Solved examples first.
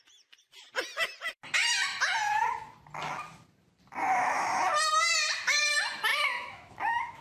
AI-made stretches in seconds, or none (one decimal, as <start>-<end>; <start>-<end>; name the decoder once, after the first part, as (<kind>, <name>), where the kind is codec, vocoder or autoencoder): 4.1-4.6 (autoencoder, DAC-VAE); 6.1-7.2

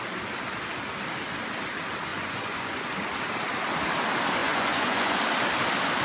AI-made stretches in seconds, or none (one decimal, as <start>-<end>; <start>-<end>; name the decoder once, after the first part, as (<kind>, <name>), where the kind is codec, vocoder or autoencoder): 2.1-2.9 (vocoder, Vocos); 4.4-5.2

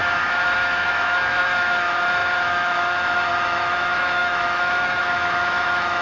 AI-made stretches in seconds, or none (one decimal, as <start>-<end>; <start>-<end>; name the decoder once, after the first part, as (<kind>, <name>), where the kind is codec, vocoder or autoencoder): 0.0-6.0 (autoencoder, DAC-VAE)